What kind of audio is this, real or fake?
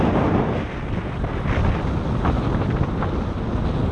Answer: real